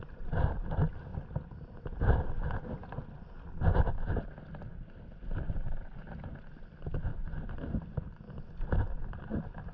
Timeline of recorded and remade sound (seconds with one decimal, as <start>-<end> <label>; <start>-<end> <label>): 0.0-1.1 recorded; 1.1-2.4 remade; 2.4-9.7 recorded